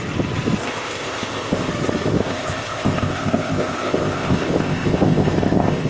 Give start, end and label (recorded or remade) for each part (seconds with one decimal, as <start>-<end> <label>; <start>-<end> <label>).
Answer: 0.0-0.6 recorded; 0.6-1.7 remade; 1.7-2.1 recorded; 2.1-5.9 remade